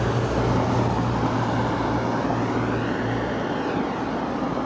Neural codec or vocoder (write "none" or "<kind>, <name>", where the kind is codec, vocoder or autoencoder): none